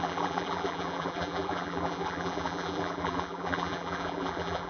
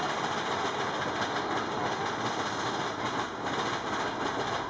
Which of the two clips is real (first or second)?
second